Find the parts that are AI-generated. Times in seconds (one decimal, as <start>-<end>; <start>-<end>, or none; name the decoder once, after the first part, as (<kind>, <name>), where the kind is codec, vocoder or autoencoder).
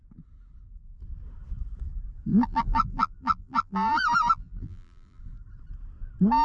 2.3-5.2 (vocoder, BigVGAN v2)